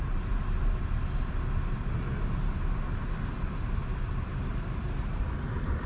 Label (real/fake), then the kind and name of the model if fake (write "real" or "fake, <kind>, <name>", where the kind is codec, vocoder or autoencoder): real